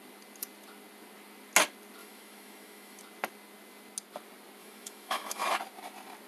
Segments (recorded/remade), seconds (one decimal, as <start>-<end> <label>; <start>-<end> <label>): 0.0-2.0 recorded; 2.0-3.0 remade; 3.0-4.6 recorded; 4.6-5.6 remade; 5.6-6.3 recorded